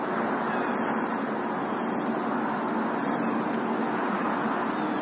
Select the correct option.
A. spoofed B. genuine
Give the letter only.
B